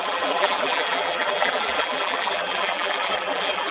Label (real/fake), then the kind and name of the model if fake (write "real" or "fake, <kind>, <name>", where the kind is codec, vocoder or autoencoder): fake, vocoder, BigVGAN v2